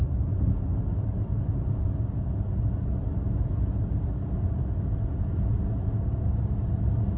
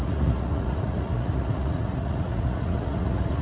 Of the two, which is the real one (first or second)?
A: first